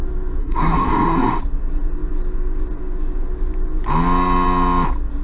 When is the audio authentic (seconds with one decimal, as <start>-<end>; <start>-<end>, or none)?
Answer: 0.0-0.4; 1.4-5.2